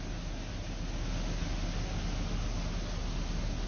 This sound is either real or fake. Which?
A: real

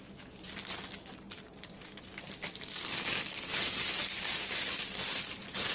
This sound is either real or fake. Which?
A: real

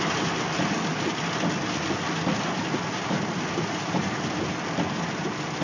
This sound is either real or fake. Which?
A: real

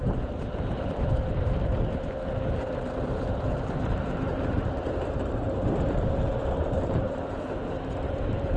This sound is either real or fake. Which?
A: fake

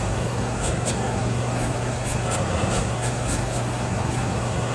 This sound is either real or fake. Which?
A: fake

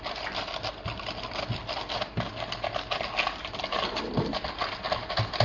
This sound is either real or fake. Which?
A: real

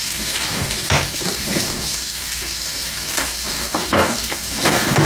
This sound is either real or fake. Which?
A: fake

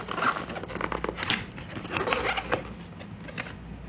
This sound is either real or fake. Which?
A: real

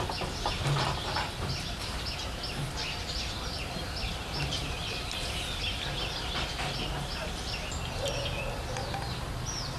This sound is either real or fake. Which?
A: fake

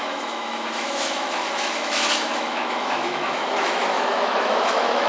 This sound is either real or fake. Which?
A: fake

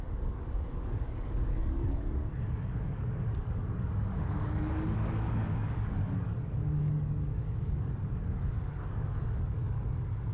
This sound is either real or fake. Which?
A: fake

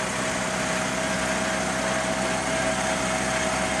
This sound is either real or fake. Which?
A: real